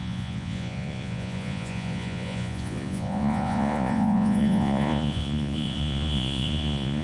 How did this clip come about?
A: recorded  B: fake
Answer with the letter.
B